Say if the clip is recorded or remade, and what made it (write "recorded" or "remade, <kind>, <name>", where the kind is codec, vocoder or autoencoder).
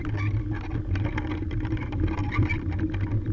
recorded